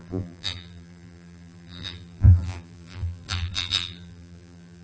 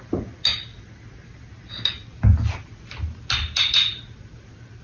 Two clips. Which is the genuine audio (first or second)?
second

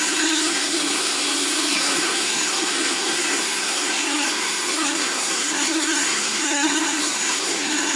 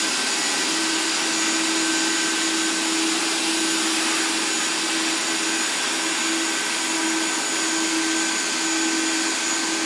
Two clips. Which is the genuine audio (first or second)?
second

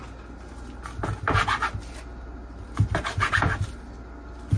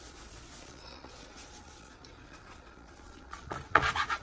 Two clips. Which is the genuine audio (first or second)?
first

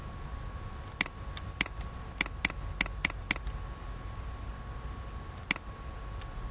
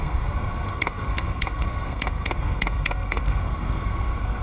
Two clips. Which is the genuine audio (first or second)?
first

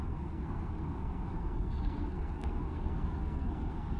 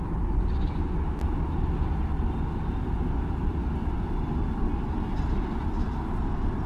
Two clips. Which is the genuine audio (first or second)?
second